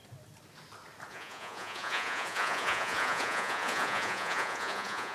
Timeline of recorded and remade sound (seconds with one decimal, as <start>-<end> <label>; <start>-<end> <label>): 0.0-1.1 recorded; 1.1-5.1 remade